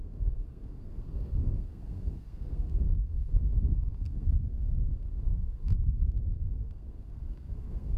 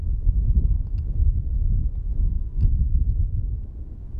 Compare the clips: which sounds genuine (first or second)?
second